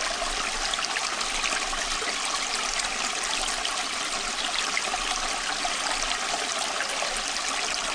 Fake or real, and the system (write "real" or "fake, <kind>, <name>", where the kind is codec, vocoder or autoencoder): real